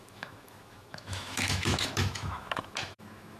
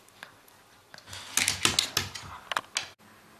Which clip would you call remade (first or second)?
first